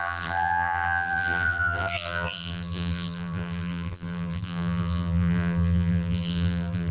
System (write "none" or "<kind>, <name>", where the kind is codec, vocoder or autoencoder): vocoder, BigVGAN v2